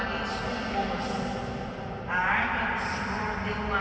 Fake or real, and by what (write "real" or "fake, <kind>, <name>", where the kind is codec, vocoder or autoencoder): real